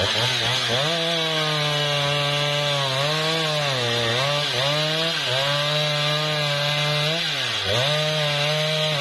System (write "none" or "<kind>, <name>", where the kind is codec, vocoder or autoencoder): none